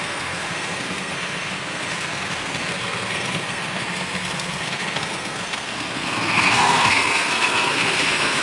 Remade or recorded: remade